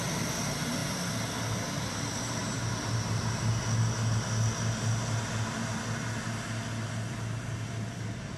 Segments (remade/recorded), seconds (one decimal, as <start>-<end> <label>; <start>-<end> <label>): 0.0-2.4 recorded; 2.4-3.2 remade; 3.2-8.4 recorded